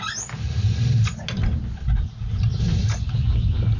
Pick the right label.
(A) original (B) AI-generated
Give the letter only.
A